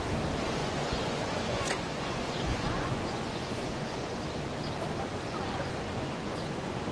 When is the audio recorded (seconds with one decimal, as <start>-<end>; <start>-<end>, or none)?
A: 0.0-0.6; 4.2-5.1